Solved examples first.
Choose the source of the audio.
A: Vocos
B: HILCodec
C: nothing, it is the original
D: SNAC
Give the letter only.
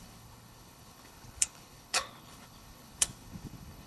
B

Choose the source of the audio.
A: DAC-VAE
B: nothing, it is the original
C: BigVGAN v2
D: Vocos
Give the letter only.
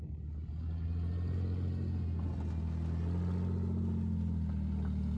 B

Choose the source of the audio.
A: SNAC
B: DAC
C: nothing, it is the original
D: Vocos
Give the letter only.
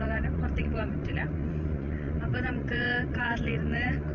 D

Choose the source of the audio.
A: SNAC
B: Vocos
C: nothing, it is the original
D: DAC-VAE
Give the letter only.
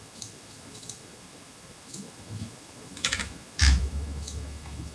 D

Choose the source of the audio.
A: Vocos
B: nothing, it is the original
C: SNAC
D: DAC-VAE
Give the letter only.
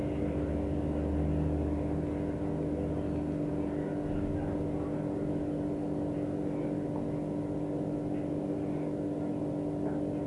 B